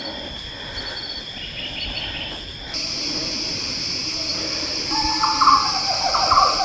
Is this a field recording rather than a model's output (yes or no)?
yes